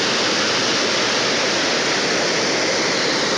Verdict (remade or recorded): recorded